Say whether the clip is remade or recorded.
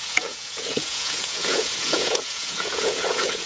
remade